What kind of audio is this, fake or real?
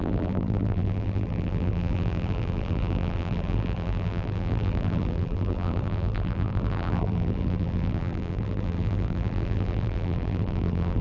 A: fake